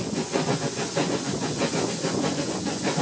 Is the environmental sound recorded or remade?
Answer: remade